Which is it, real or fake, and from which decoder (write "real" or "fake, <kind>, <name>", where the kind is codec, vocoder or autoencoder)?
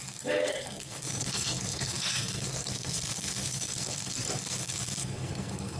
fake, codec, SNAC